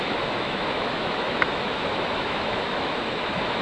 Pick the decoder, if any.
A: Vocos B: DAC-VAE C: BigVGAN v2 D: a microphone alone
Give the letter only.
B